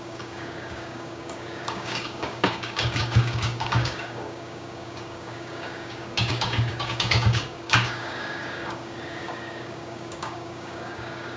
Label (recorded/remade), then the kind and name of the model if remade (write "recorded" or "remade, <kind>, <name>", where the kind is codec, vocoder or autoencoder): remade, codec, DAC